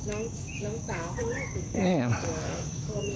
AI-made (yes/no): yes